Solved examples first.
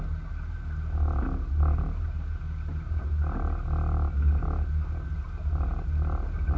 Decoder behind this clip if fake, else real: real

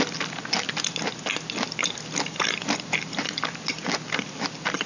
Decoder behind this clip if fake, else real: real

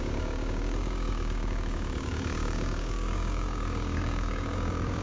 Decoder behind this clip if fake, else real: fake, codec, DAC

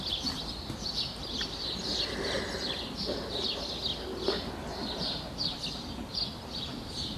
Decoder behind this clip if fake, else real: real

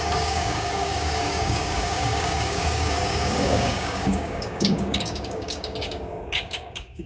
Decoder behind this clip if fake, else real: fake, codec, DAC